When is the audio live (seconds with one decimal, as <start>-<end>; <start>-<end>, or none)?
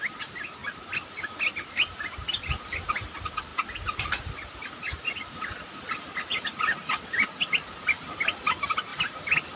0.0-9.6